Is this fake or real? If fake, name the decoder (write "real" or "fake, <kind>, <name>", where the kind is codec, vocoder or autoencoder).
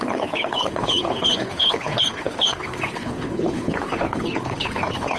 fake, codec, HILCodec